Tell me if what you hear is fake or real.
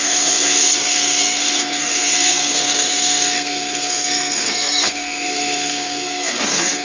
fake